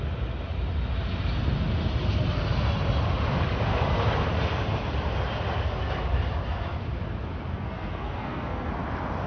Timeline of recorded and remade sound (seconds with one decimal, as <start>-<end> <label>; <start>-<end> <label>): 0.0-7.5 recorded; 7.5-8.7 remade; 8.7-9.3 recorded